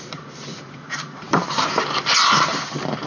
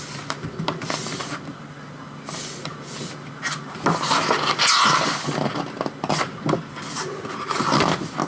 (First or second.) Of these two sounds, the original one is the second